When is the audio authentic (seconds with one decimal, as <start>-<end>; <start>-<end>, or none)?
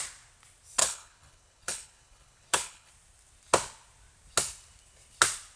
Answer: 0.0-0.8; 2.9-5.6